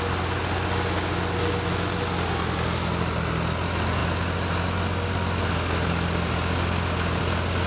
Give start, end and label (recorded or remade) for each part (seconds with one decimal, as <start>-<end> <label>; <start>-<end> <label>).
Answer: 0.0-7.7 recorded